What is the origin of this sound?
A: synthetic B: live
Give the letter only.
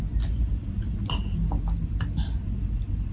B